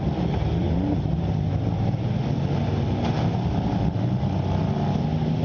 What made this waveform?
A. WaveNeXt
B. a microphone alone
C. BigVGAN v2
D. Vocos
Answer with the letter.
B